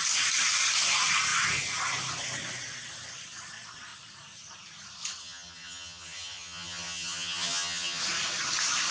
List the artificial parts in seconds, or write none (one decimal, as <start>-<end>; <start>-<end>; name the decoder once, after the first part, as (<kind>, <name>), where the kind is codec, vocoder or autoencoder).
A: 5.2-8.0 (vocoder, HiFi-GAN)